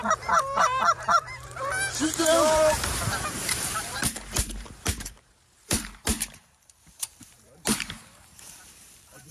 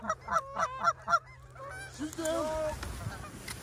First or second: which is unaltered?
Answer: second